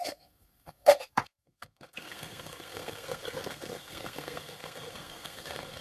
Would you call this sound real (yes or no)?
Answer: no